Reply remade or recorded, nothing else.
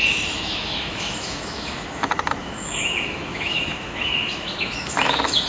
remade